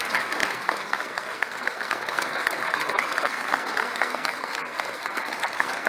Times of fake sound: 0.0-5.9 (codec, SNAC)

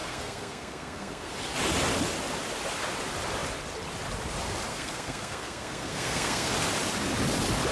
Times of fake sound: 0.0-1.3 (codec, SNAC); 4.7-6.5

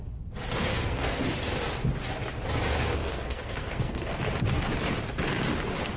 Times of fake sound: 0.7-1.2 (codec, SNAC); 2.9-4.2

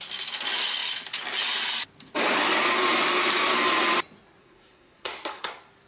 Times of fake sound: 4.4-5.5 (codec, SNAC)

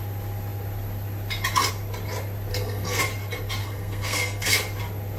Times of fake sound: 2.5-3.0 (codec, SNAC); 3.6-4.5

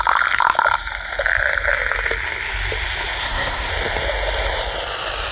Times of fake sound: 3.2-3.7 (codec, SNAC)

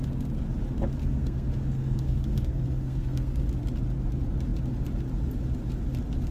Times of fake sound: 1.0-3.4 (codec, SNAC)

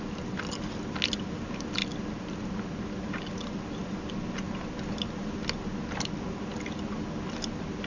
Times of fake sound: none